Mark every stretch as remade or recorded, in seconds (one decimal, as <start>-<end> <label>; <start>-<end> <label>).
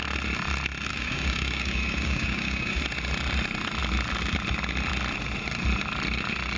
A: 0.0-0.9 recorded; 0.9-2.8 remade; 2.8-6.6 recorded